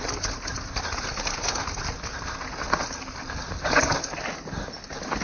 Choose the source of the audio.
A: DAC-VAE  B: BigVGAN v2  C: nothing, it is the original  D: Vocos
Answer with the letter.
C